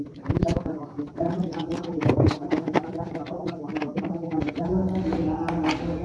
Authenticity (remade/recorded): recorded